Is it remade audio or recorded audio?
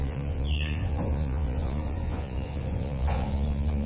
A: remade